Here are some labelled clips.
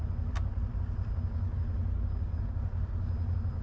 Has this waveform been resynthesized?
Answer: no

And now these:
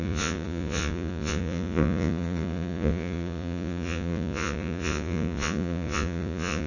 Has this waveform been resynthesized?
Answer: yes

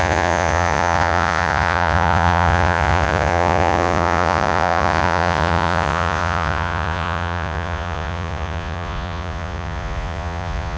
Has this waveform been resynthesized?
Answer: yes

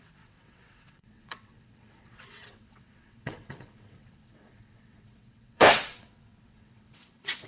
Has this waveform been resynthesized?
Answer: yes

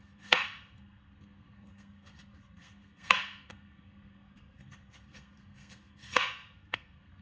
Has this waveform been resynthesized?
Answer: yes